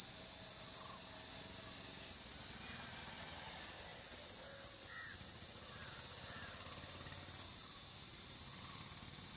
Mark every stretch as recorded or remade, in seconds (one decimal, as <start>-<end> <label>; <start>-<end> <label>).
0.0-9.4 recorded